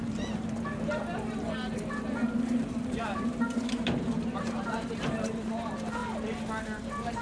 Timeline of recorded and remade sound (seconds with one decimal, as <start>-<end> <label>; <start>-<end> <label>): 0.0-6.0 remade; 6.0-6.6 recorded; 6.6-7.2 remade